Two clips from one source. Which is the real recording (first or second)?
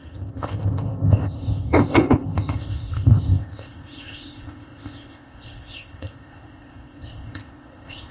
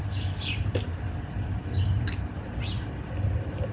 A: second